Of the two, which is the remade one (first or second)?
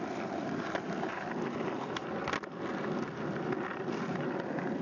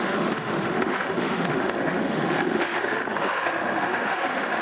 second